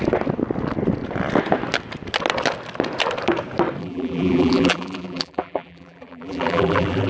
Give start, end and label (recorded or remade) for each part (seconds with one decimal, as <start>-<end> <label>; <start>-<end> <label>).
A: 0.0-3.8 recorded; 3.8-7.1 remade